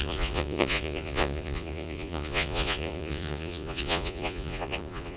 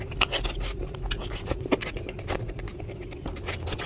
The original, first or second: second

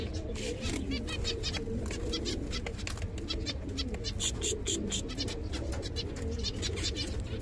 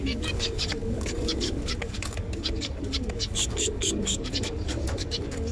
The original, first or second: first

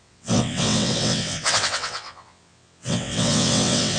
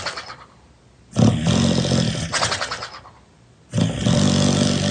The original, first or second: second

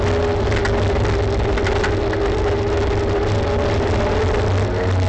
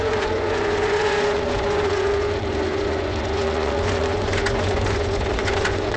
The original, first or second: first